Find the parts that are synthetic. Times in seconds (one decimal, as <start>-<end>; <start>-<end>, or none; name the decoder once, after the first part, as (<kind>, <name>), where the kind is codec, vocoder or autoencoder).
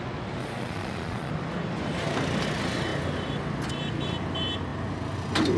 0.4-1.3 (vocoder, Vocos)